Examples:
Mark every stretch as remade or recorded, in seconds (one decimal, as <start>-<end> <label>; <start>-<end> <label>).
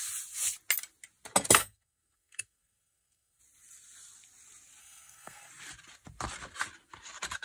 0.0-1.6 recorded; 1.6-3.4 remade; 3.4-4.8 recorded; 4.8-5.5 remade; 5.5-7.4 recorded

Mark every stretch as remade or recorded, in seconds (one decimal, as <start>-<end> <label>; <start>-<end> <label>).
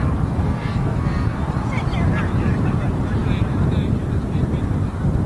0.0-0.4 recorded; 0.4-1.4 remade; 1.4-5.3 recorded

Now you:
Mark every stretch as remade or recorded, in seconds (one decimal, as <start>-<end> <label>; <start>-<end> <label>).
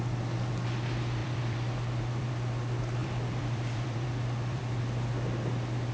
0.0-1.2 recorded; 1.2-2.3 remade; 2.3-3.0 recorded; 3.0-4.6 remade; 4.6-5.9 recorded